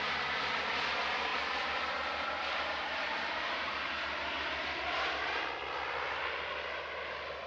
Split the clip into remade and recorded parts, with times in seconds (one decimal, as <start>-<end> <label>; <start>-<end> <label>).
0.0-1.3 recorded; 1.3-5.4 remade; 5.4-7.5 recorded